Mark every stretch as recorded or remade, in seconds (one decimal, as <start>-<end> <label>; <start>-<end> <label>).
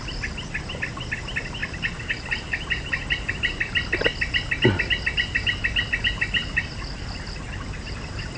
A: 0.0-1.6 recorded; 1.6-3.3 remade; 3.3-6.4 recorded; 6.4-8.4 remade